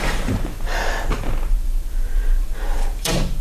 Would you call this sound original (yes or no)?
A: no